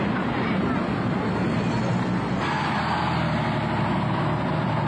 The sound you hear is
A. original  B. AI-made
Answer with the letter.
A